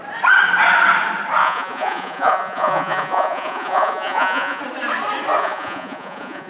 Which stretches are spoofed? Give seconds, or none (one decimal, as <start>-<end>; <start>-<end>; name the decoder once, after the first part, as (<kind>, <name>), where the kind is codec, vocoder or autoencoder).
1.4-4.6 (vocoder, Vocos); 5.4-6.5